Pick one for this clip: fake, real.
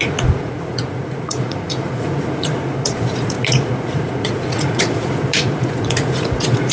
fake